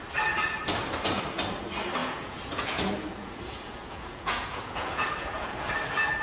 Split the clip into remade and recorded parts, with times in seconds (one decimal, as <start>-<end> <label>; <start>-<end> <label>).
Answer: 0.0-2.0 recorded; 2.0-5.7 remade; 5.7-6.2 recorded